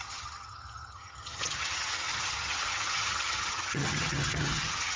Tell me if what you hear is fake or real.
fake